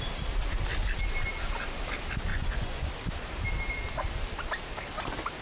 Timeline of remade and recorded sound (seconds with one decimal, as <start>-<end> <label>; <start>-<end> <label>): 0.0-2.3 recorded; 2.3-2.9 remade; 2.9-5.4 recorded